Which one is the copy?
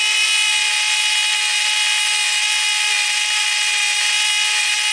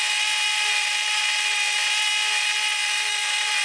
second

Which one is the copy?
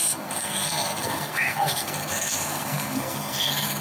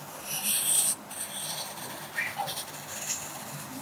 first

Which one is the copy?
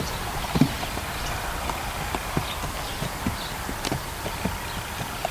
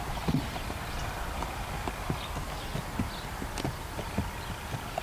first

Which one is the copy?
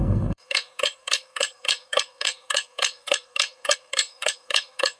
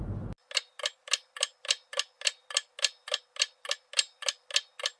first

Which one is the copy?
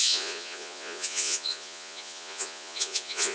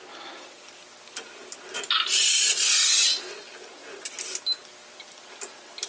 first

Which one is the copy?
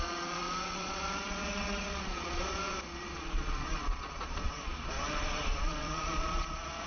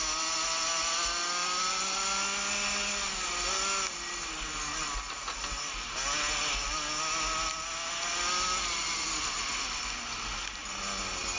first